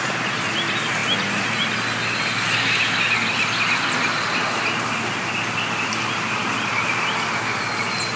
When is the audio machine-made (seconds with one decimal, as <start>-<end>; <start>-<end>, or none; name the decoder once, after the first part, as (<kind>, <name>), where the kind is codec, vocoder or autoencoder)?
none